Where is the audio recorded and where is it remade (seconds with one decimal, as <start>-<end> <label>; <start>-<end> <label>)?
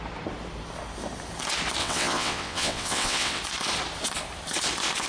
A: 0.0-1.8 recorded; 1.8-3.4 remade; 3.4-5.1 recorded